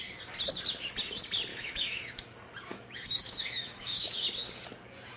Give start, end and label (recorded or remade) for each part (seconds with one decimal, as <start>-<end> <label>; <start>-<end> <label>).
0.0-1.5 recorded; 1.5-2.2 remade; 2.2-2.7 recorded; 2.7-4.2 remade; 4.2-5.2 recorded